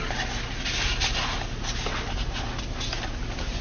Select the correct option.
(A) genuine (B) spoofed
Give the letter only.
A